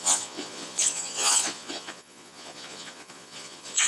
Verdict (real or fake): fake